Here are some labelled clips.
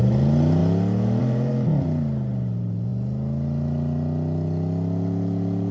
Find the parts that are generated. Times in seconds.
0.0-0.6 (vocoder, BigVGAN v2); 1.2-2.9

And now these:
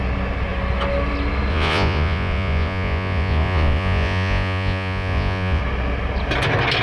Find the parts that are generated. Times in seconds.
1.5-5.6 (vocoder, Vocos)